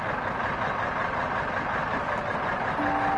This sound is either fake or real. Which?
real